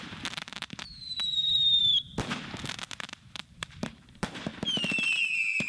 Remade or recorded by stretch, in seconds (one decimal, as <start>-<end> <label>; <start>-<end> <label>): 0.0-1.8 remade; 1.8-3.1 recorded; 3.1-4.5 remade; 4.5-5.7 recorded